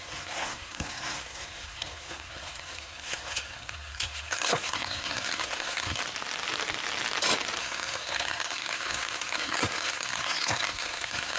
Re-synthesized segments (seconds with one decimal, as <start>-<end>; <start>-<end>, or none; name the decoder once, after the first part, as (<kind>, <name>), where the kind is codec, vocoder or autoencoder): 0.0-6.0 (codec, SNAC); 7.6-11.4